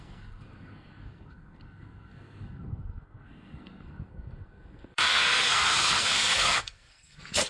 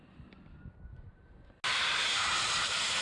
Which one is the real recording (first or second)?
second